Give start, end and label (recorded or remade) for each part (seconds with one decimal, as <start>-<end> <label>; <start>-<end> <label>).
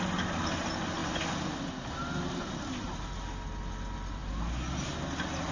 0.0-5.5 recorded